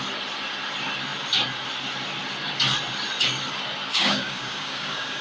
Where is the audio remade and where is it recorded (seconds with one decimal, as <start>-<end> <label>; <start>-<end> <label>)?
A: 0.0-3.9 recorded; 3.9-5.2 remade